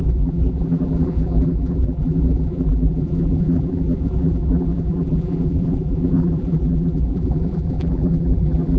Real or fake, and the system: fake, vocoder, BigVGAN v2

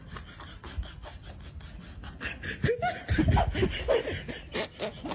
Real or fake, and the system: real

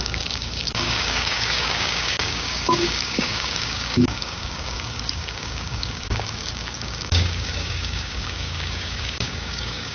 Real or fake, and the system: fake, codec, DAC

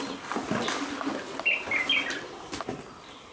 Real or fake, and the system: real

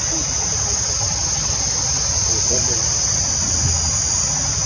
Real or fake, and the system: real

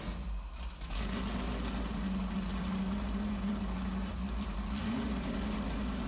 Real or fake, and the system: real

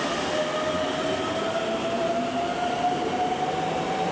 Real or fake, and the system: real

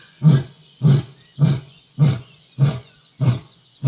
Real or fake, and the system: fake, vocoder, Vocos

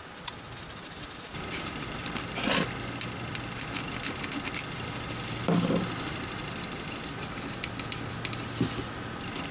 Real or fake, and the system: real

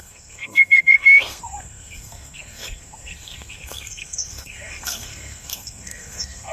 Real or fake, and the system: fake, codec, SNAC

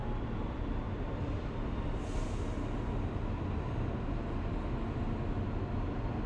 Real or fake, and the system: real